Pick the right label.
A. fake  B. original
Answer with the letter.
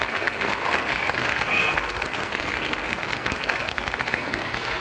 A